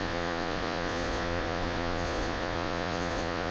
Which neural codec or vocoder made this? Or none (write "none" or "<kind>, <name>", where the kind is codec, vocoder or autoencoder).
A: vocoder, Vocos